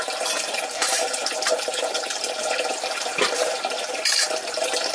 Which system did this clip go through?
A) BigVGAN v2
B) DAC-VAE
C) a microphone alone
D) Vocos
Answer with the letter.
A